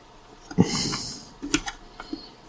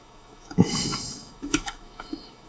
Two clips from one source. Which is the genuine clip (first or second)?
first